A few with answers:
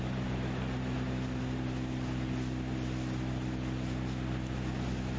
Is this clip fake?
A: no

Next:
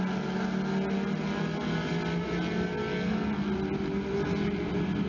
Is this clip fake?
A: no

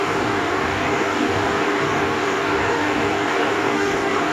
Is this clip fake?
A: yes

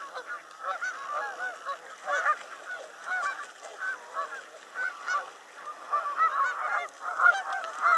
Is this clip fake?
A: no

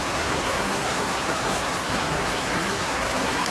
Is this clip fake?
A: yes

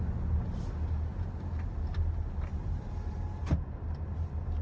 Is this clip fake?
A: no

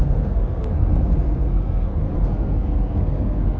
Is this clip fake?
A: yes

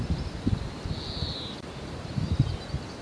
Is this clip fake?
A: no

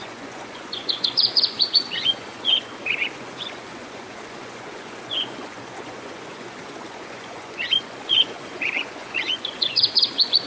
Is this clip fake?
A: yes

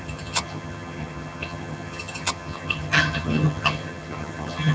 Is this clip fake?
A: yes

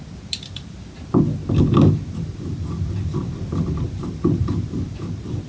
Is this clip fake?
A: no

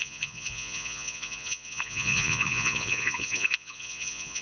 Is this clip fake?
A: yes